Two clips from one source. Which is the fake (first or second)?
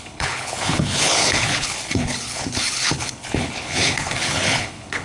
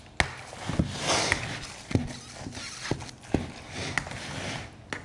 first